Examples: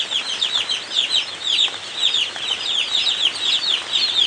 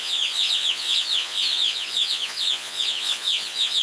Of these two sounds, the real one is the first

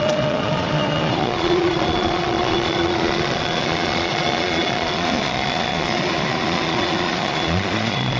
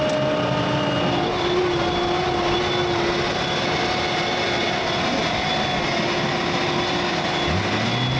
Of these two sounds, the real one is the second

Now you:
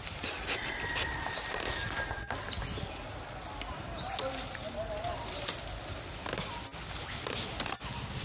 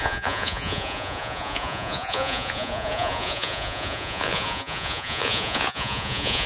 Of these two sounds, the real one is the first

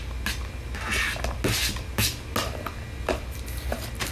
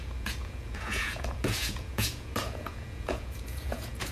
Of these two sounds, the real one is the first